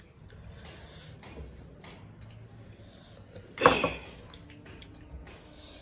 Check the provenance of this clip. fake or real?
real